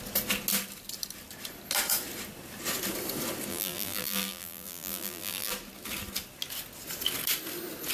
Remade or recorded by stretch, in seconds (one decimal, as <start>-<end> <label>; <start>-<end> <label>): 0.0-3.5 recorded; 3.5-5.5 remade; 5.5-7.9 recorded